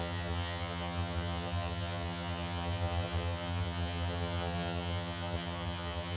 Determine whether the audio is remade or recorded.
remade